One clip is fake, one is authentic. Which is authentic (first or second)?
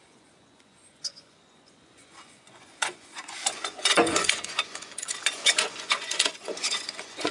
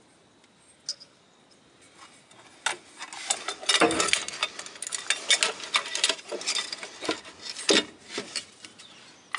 second